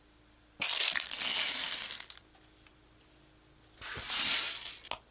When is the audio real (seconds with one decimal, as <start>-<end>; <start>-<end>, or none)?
0.0-5.1